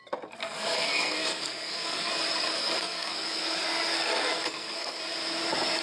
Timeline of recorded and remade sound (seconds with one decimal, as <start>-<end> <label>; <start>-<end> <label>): 0.0-0.4 recorded; 0.4-2.1 remade; 2.1-2.6 recorded; 2.6-5.0 remade; 5.0-5.8 recorded